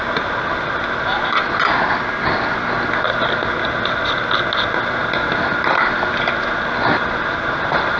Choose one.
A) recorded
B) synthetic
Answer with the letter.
A